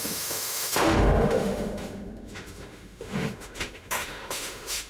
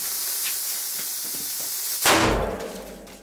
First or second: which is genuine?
second